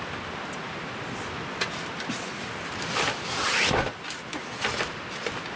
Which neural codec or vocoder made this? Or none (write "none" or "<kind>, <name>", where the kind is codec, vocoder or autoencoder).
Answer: none